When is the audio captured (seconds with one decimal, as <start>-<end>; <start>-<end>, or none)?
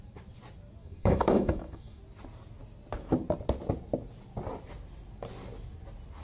0.0-0.8; 2.0-6.2